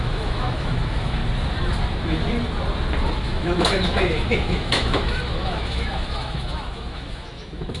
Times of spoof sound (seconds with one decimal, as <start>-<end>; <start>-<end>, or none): 0.0-1.2; 3.2-7.8